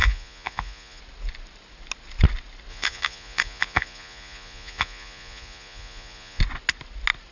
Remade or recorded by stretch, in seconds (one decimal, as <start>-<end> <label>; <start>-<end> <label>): 0.0-1.0 remade; 1.0-2.7 recorded; 2.7-6.4 remade; 6.4-7.3 recorded